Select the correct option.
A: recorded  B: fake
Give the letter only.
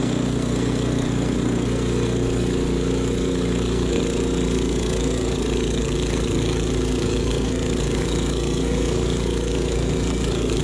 B